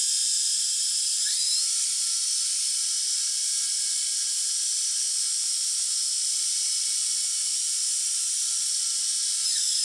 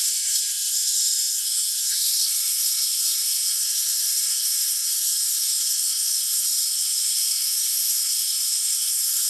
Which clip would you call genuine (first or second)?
first